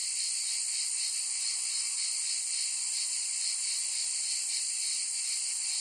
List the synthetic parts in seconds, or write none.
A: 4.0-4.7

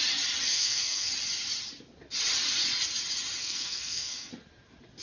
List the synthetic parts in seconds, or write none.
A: 0.5-1.1; 3.4-4.3

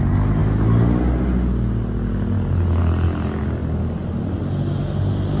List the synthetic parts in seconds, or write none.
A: none

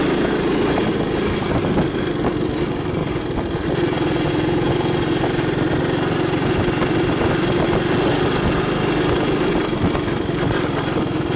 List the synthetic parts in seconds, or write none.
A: none

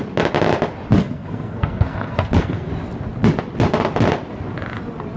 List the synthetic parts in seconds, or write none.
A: 1.0-2.7

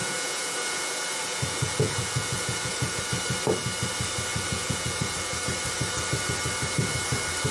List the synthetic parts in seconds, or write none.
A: 0.0-3.0; 4.3-5.4

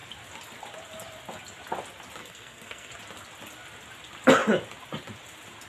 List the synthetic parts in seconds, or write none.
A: 2.2-2.9

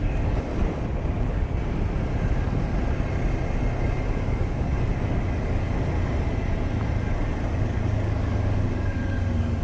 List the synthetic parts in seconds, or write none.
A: 0.0-0.5; 4.1-5.7; 7.5-9.6